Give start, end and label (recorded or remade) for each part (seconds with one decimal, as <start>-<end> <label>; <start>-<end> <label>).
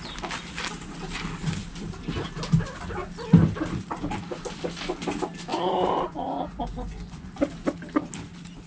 0.0-5.5 recorded; 5.5-7.3 remade; 7.3-8.7 recorded